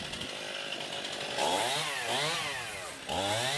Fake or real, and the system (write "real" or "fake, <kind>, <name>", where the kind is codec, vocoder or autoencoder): real